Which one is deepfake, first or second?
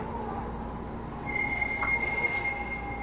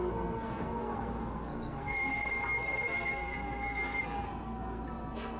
second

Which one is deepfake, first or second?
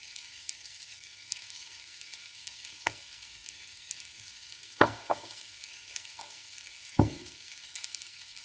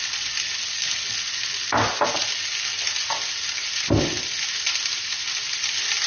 first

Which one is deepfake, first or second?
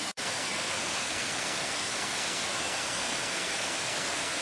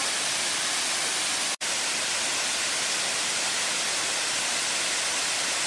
first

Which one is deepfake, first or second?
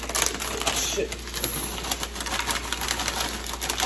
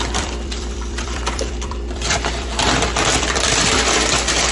second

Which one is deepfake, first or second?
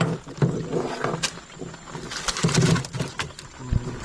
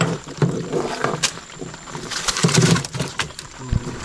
second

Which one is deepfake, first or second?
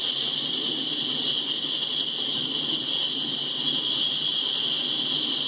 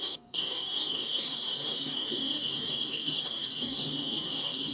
second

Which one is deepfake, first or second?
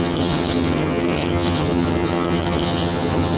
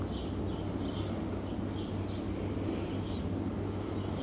first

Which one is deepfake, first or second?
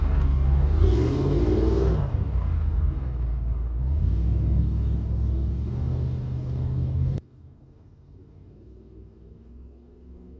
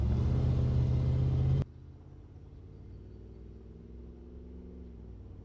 first